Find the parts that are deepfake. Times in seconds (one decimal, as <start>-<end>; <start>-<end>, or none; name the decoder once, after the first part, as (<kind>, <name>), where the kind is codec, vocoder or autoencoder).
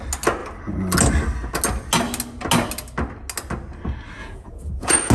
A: 4.2-5.1 (vocoder, Vocos)